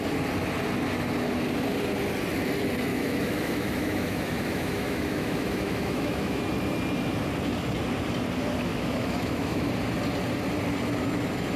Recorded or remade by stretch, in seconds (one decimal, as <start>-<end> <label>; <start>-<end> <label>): 0.0-2.9 recorded; 2.9-6.4 remade; 6.4-8.7 recorded; 8.7-9.7 remade; 9.7-11.6 recorded